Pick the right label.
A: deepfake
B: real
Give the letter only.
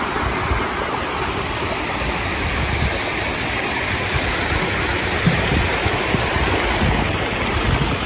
B